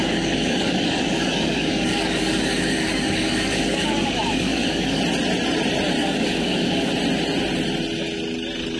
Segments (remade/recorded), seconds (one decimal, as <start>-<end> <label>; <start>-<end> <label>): 0.0-5.0 remade; 5.0-6.0 recorded; 6.0-6.9 remade; 6.9-8.8 recorded